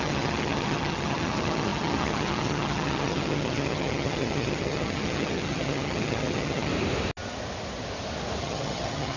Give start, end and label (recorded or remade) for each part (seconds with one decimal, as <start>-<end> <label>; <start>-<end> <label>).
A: 0.0-6.7 remade; 6.7-8.4 recorded; 8.4-9.2 remade